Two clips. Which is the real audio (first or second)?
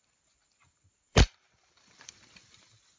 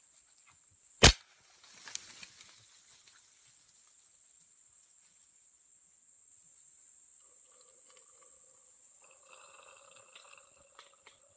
second